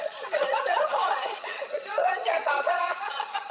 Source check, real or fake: fake